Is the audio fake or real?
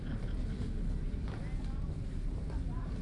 real